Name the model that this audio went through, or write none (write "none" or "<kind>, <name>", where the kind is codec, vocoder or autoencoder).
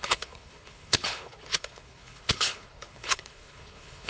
codec, HILCodec